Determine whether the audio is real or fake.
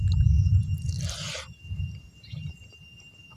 real